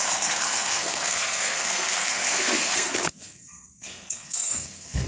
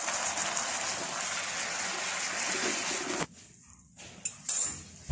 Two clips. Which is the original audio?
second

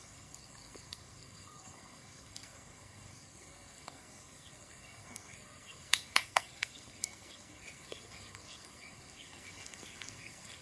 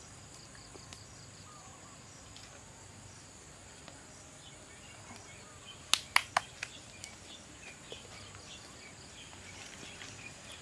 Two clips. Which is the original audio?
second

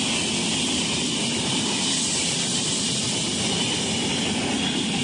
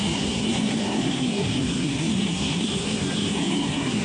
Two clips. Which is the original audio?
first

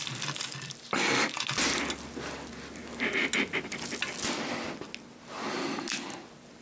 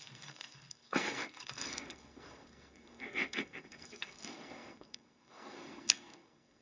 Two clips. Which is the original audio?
first